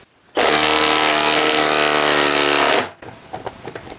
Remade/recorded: recorded